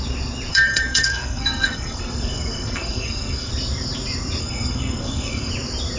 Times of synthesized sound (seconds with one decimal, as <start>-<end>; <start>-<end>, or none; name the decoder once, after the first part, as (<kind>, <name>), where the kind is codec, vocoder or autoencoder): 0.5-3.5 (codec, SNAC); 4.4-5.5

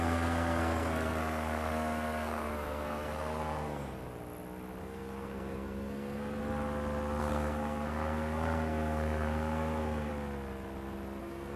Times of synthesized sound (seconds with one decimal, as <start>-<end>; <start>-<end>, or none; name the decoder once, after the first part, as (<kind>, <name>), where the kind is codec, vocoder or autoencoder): 0.0-4.0 (codec, SNAC); 4.8-6.4; 7.2-10.1; 11.2-11.6

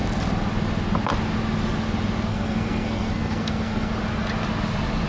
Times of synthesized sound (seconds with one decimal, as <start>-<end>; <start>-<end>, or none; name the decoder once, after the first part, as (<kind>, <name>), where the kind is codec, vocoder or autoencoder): 2.3-3.9 (codec, SNAC)